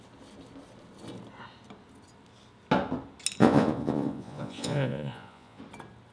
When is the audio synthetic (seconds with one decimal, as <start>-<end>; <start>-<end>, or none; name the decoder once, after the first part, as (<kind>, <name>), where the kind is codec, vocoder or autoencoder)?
3.4-5.6 (vocoder, Vocos)